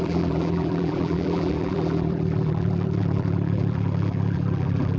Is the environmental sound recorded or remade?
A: remade